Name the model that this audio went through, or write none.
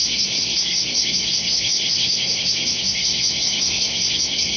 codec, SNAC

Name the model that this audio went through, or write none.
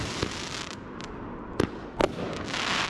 none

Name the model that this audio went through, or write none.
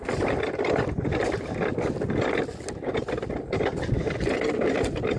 none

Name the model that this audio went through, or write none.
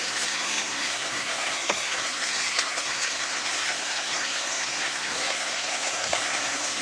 codec, SNAC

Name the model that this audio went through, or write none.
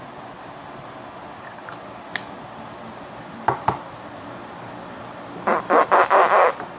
none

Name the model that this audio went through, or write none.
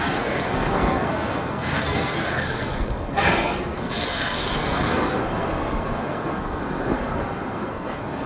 codec, SNAC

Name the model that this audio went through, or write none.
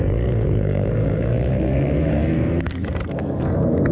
codec, SNAC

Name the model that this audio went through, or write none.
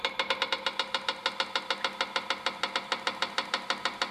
none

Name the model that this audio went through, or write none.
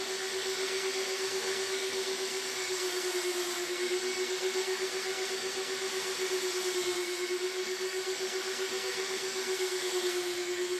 codec, SNAC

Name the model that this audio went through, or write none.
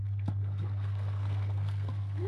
codec, SNAC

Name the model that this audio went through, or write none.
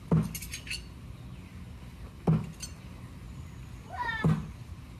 none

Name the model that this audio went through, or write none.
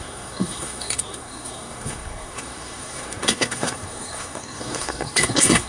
codec, SNAC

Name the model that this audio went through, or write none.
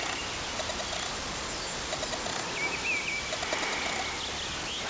none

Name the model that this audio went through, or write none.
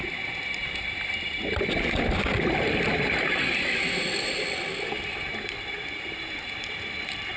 none